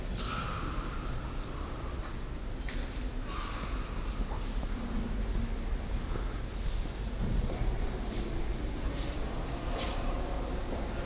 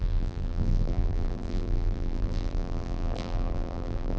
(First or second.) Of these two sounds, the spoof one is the second